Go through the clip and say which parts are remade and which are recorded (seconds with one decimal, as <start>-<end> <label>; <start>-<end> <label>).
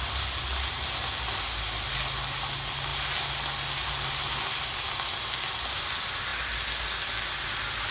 0.0-7.9 recorded